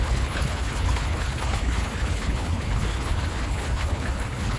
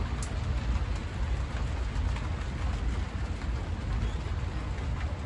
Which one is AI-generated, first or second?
first